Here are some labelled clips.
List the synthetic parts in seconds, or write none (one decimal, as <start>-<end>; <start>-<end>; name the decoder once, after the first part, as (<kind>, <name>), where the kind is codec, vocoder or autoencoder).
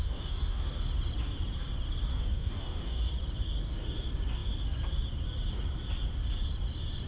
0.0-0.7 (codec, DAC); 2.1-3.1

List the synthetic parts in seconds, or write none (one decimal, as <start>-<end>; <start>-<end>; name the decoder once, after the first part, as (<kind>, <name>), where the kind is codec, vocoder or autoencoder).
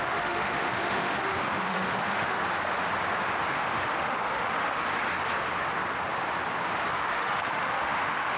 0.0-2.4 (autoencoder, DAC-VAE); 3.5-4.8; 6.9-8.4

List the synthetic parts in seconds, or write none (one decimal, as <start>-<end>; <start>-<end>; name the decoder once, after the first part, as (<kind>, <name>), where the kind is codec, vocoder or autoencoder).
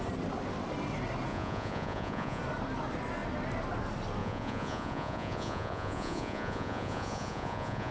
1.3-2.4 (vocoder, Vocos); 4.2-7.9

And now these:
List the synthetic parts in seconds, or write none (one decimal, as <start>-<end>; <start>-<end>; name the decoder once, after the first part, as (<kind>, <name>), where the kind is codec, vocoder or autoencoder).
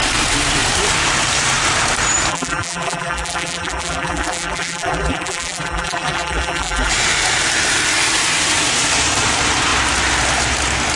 2.3-6.9 (vocoder, BigVGAN v2)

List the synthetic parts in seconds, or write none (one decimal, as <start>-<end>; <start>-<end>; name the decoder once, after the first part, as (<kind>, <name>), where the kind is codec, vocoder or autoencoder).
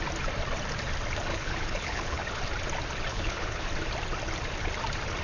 1.3-2.4 (codec, HILCodec); 3.1-3.7